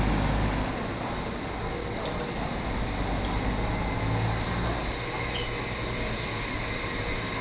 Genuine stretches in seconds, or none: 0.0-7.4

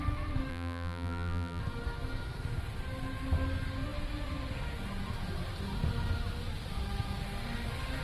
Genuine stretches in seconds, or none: 0.0-0.5; 1.6-8.0